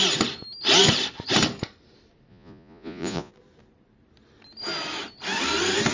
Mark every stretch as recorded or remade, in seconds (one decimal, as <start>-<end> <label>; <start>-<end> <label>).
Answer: 0.0-2.3 recorded; 2.3-3.3 remade; 3.3-5.9 recorded